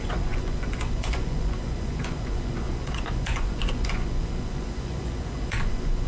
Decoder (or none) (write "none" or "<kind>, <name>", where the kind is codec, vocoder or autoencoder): vocoder, Vocos